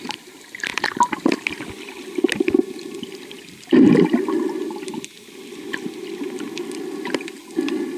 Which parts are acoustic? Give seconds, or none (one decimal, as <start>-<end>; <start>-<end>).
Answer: 0.0-8.0